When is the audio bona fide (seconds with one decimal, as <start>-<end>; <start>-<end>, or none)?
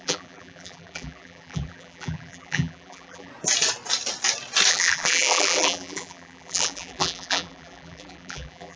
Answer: 3.3-4.7